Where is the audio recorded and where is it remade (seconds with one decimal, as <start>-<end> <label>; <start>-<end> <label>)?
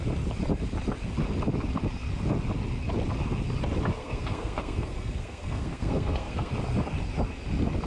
0.0-4.0 recorded; 4.0-6.5 remade; 6.5-7.9 recorded